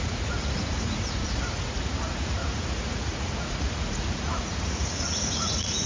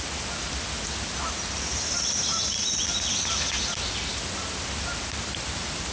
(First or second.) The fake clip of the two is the first